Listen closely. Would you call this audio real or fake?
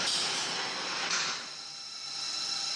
real